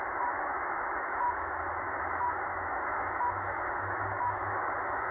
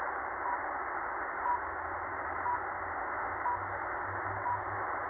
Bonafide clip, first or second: second